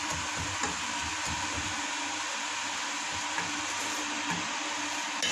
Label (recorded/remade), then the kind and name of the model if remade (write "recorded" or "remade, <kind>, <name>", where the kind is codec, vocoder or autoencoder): recorded